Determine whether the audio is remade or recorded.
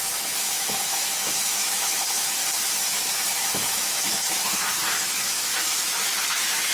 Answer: remade